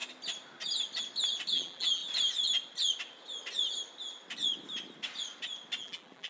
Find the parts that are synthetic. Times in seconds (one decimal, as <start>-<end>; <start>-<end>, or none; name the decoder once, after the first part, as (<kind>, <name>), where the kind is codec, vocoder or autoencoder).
1.5-2.0 (vocoder, BigVGAN v2); 5.8-6.3